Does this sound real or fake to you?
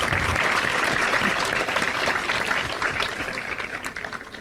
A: fake